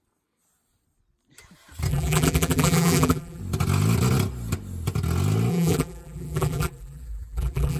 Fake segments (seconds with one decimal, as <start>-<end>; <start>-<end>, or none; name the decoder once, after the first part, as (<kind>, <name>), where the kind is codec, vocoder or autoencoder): 1.9-3.4 (vocoder, BigVGAN v2); 5.5-7.8